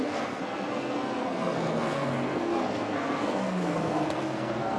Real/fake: fake